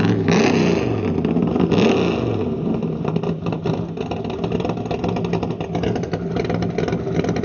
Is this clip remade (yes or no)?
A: no